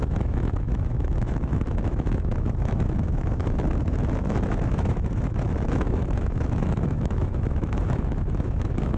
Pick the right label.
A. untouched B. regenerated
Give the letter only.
B